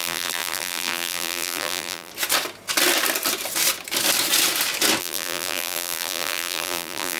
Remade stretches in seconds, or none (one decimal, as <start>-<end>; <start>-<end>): 0.0-2.1; 5.0-7.2